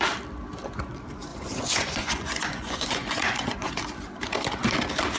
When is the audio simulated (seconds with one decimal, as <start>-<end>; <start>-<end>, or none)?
1.3-3.7